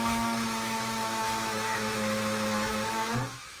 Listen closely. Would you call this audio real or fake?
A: fake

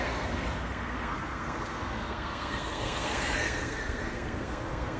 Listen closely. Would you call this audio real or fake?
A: fake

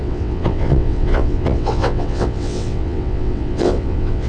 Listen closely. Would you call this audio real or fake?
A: fake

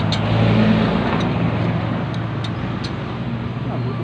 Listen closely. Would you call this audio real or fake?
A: real